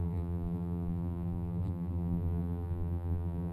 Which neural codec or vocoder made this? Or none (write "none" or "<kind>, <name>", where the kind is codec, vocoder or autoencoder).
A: vocoder, BigVGAN v2